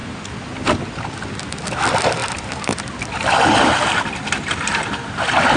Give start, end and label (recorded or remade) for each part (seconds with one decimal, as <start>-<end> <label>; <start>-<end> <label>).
0.0-2.2 recorded; 2.2-5.6 remade